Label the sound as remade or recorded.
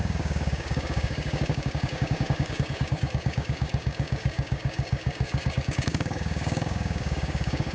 remade